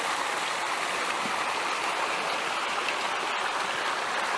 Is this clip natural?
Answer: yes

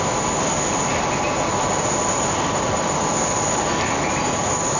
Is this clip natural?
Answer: yes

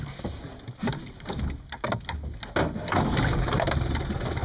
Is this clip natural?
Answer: yes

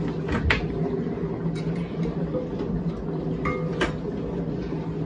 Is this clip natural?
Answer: yes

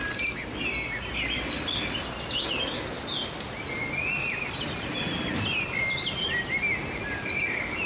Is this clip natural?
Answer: yes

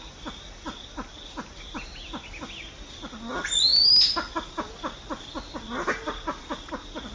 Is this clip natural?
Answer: yes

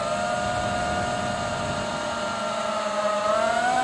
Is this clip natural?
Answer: yes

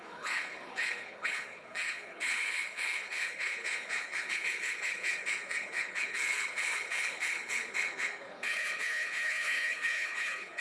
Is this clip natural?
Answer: no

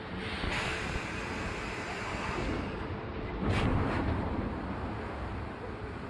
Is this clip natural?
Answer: yes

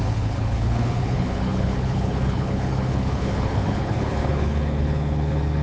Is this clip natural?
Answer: no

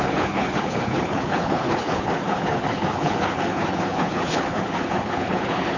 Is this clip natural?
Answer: no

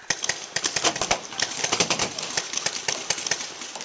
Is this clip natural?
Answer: yes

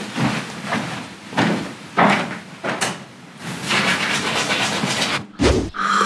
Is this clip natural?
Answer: yes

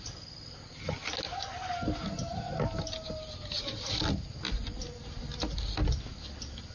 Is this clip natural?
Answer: yes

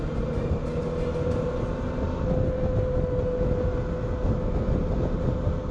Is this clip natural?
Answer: yes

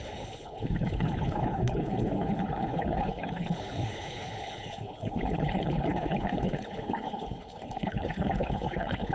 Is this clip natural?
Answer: no